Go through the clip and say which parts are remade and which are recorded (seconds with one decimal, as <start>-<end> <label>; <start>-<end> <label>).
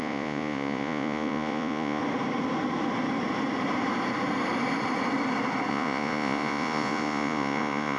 0.0-2.0 remade; 2.0-5.7 recorded; 5.7-8.0 remade